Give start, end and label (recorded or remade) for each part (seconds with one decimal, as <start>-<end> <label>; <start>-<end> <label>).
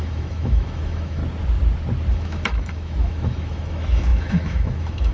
0.0-1.2 remade; 1.2-2.1 recorded; 2.1-5.1 remade